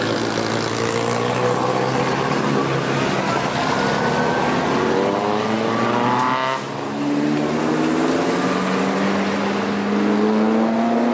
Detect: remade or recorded recorded